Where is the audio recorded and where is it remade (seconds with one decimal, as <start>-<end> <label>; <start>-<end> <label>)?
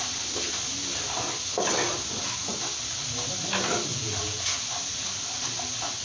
0.0-3.9 recorded; 3.9-4.6 remade; 4.6-6.0 recorded